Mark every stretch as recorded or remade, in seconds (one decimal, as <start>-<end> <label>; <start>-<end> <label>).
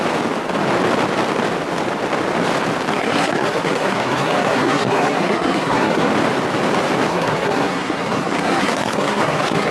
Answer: 0.0-2.9 recorded; 2.9-6.1 remade; 6.1-7.1 recorded; 7.1-9.7 remade